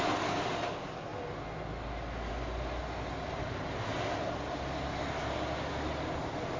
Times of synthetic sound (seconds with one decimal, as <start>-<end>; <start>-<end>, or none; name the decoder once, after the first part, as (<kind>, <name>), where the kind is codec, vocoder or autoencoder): none